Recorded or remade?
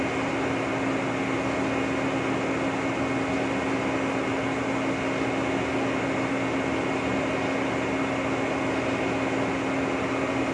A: recorded